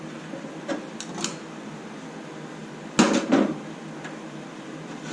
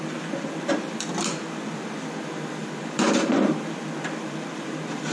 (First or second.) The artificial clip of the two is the second